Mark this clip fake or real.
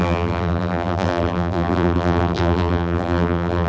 fake